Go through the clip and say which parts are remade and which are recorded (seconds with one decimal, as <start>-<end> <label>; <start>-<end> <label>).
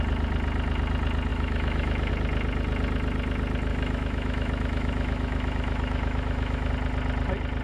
0.0-1.3 recorded; 1.3-2.1 remade; 2.1-3.7 recorded; 3.7-6.7 remade; 6.7-7.6 recorded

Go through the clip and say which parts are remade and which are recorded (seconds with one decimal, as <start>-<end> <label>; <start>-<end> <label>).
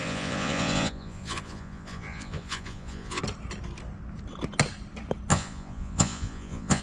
0.0-3.2 remade; 3.2-5.3 recorded; 5.3-6.8 remade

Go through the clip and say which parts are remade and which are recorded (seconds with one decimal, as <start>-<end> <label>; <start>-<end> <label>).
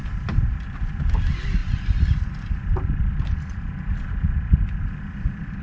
0.0-5.6 recorded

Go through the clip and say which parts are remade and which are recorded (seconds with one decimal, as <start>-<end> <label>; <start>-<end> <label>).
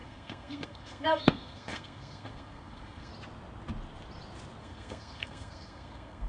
0.0-3.1 remade; 3.1-4.6 recorded; 4.6-6.3 remade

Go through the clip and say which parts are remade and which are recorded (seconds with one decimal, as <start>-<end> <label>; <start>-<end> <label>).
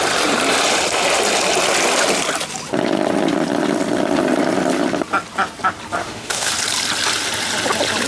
0.0-6.0 recorded; 6.0-6.5 remade; 6.5-8.1 recorded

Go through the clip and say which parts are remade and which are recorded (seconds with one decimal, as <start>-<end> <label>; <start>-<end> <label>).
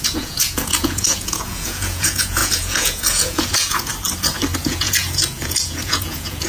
0.0-3.9 remade; 3.9-4.6 recorded; 4.6-6.5 remade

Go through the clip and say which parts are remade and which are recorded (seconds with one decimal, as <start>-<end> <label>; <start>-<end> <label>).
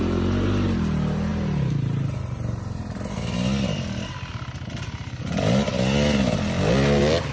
0.0-7.3 recorded